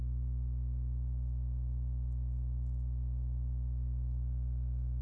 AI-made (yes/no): no